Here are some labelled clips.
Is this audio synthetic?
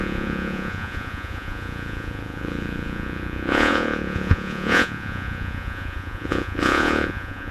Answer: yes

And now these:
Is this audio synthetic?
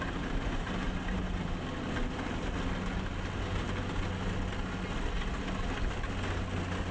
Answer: no